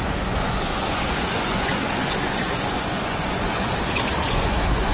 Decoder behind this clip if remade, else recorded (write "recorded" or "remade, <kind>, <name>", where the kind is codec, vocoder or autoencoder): remade, vocoder, Vocos